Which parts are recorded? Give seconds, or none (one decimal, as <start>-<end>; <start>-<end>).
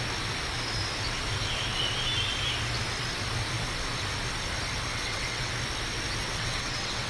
0.0-4.9; 5.5-6.2